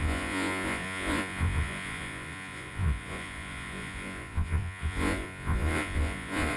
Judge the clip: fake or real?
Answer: fake